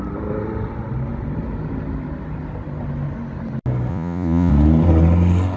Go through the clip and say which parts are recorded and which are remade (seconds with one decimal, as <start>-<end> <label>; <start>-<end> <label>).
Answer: 0.0-3.9 recorded; 3.9-4.5 remade; 4.5-5.6 recorded